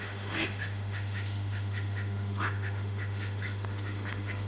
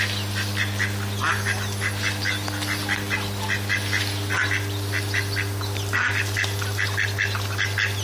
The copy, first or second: first